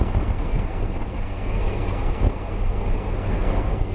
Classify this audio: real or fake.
fake